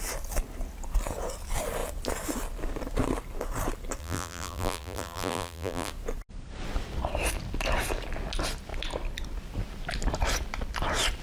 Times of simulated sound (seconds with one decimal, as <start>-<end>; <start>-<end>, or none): 4.0-5.9